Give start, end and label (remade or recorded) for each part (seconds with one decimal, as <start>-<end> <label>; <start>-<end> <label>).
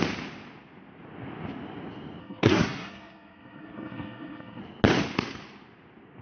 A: 0.0-2.2 recorded; 2.2-4.6 remade; 4.6-6.2 recorded